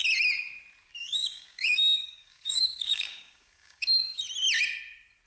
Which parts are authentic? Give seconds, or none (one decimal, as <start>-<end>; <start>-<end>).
0.0-1.0; 4.2-5.3